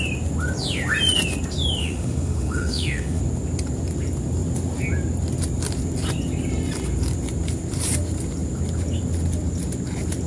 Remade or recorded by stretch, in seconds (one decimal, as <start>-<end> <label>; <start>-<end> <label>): 0.0-1.8 recorded; 1.8-3.2 remade; 3.2-10.3 recorded